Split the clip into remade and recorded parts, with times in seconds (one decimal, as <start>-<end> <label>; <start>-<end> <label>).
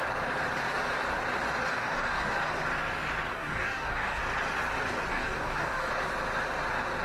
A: 0.0-1.7 recorded; 1.7-2.3 remade; 2.3-3.3 recorded; 3.3-4.2 remade; 4.2-5.1 recorded; 5.1-5.9 remade; 5.9-7.0 recorded